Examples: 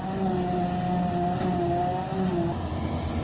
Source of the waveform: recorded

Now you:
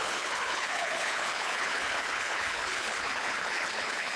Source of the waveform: remade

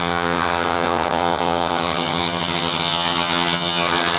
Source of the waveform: remade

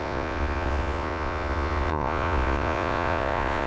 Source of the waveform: remade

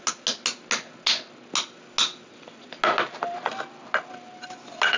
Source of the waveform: recorded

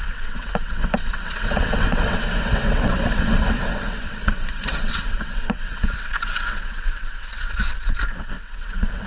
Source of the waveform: remade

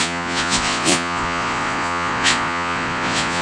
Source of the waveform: remade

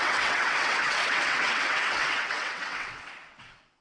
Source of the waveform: remade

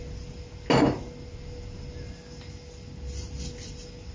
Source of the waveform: recorded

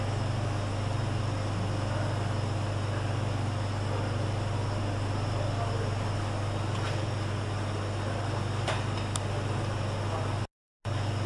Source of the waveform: recorded